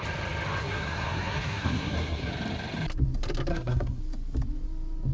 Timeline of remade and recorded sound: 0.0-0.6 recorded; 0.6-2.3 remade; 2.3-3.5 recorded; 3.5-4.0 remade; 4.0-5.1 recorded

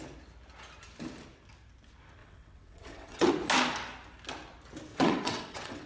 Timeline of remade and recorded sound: 0.0-2.2 recorded; 2.2-3.3 remade; 3.3-4.9 recorded; 4.9-5.9 remade

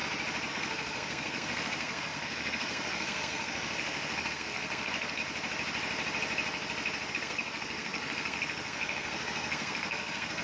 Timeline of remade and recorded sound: 0.0-0.5 recorded; 0.5-5.2 remade; 5.2-7.1 recorded; 7.1-10.4 remade

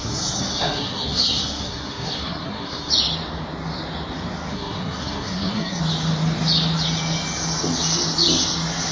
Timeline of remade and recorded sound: 0.0-2.9 remade; 2.9-4.5 recorded; 4.5-5.8 remade; 5.8-8.9 recorded

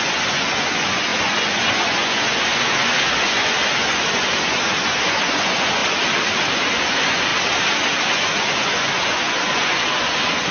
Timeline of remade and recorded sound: 0.0-5.8 remade; 5.8-6.5 recorded; 6.5-7.3 remade; 7.3-8.0 recorded; 8.0-10.5 remade

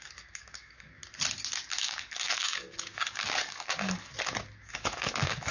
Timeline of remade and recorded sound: 0.0-1.0 remade; 1.0-1.7 recorded; 1.7-4.1 remade; 4.1-4.7 recorded; 4.7-5.5 remade

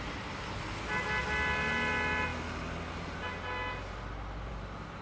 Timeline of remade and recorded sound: 0.0-5.0 recorded